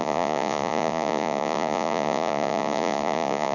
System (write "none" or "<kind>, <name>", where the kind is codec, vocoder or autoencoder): vocoder, Vocos